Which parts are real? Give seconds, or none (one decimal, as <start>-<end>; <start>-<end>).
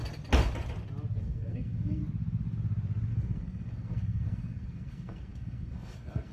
0.0-1.2; 2.0-3.1